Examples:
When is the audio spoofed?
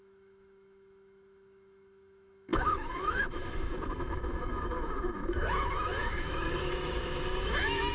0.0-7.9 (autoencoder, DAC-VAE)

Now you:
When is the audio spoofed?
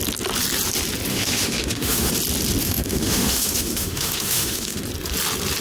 1.1-2.1 (autoencoder, DAC-VAE); 2.6-4.8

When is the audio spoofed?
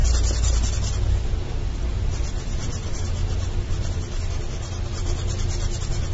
none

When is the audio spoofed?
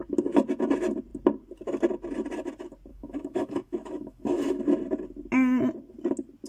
2.9-4.6 (autoencoder, DAC-VAE)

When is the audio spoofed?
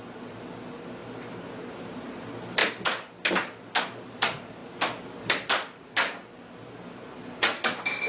none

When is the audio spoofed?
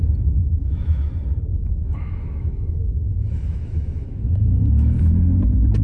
0.4-1.1 (autoencoder, DAC-VAE); 1.5-5.0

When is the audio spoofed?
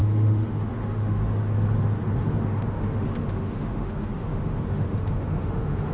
0.0-1.2 (autoencoder, DAC-VAE); 2.2-5.9